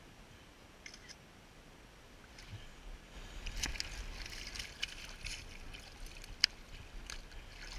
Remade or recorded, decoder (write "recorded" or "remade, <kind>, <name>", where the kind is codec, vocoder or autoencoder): recorded